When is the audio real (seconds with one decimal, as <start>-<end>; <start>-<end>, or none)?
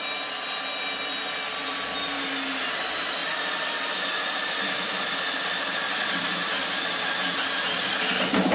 0.0-3.2; 5.0-8.5